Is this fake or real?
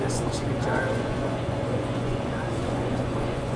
fake